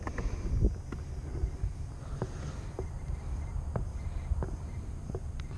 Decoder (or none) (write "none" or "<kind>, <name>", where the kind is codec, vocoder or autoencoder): none